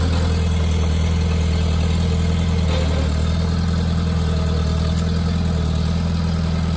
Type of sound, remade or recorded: recorded